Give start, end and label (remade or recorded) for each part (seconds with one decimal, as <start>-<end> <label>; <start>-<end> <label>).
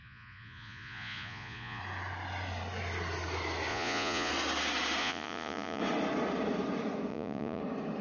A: 0.0-1.8 remade; 1.8-3.7 recorded; 3.7-4.3 remade; 4.3-5.0 recorded; 5.0-5.8 remade; 5.8-7.1 recorded; 7.1-7.6 remade; 7.6-8.0 recorded